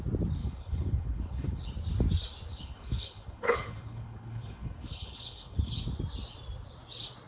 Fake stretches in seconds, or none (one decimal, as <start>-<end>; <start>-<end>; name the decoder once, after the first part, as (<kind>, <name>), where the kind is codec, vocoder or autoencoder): 0.4-1.7 (codec, HILCodec); 2.5-5.8